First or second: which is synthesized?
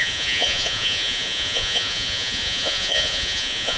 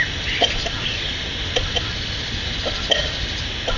first